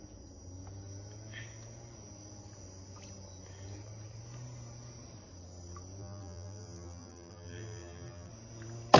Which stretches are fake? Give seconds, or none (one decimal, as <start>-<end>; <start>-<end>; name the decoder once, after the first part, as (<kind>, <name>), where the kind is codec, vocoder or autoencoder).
6.0-8.3 (vocoder, BigVGAN v2)